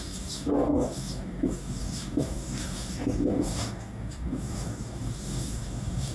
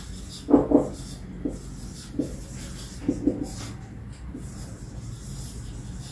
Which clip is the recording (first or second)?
second